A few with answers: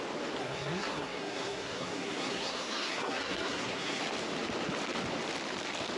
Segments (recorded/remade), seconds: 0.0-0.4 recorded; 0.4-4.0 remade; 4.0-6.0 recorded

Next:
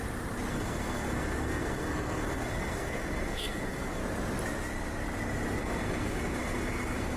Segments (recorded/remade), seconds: 0.0-0.5 recorded; 0.5-4.0 remade; 4.0-5.6 recorded; 5.6-7.2 remade

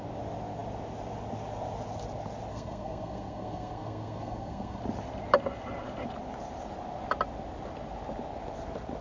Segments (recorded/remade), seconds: 0.0-2.5 recorded; 2.5-4.8 remade; 4.8-9.0 recorded

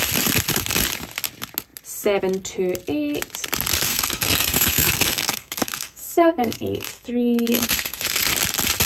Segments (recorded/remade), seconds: 0.0-3.9 recorded; 3.9-8.3 remade; 8.3-8.8 recorded

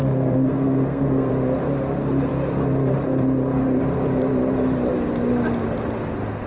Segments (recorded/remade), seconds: 0.0-1.3 remade; 1.3-6.5 recorded

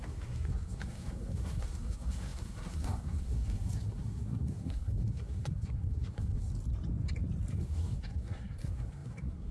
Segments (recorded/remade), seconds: 0.0-6.5 remade; 6.5-7.5 recorded; 7.5-9.5 remade